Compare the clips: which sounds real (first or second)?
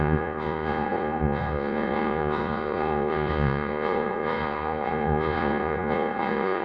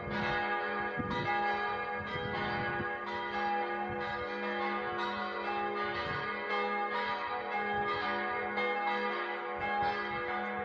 second